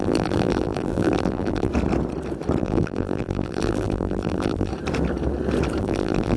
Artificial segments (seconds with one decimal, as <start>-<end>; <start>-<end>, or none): 0.0-1.7; 2.6-4.7; 5.8-6.4